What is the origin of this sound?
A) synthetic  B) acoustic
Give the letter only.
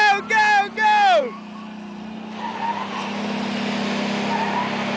B